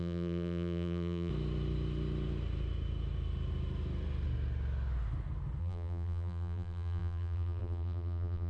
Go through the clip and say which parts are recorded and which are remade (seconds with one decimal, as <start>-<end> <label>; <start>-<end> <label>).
0.0-1.3 remade; 1.3-5.6 recorded; 5.6-8.5 remade